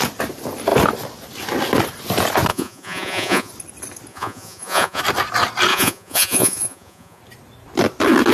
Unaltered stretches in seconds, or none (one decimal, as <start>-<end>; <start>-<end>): 0.0-2.5; 3.5-4.1; 5.0-5.7; 7.2-8.3